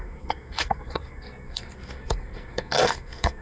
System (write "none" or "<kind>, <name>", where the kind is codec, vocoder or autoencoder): codec, SNAC